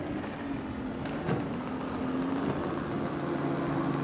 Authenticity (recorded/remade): recorded